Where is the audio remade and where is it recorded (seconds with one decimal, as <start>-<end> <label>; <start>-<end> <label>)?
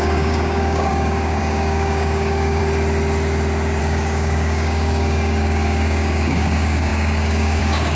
0.0-2.6 remade; 2.6-3.8 recorded; 3.8-8.0 remade